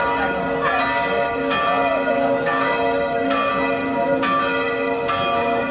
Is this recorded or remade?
recorded